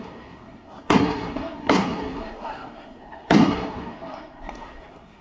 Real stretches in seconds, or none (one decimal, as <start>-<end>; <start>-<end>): none